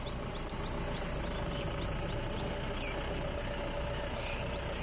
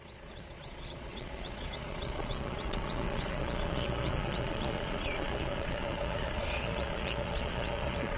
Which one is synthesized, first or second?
second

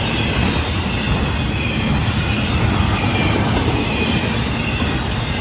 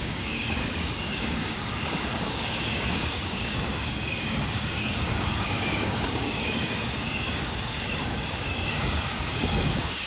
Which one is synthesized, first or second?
second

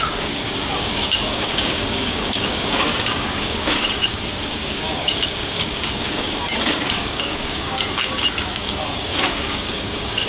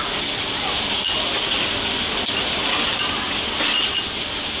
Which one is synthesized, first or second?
first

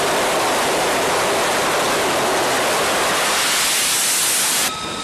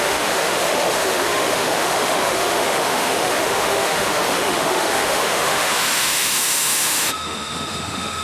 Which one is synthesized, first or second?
second